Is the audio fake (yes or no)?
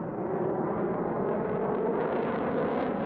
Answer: no